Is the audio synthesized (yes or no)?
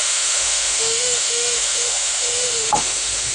yes